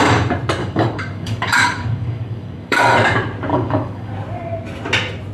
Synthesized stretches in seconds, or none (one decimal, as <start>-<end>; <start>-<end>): 0.6-2.9; 3.5-4.1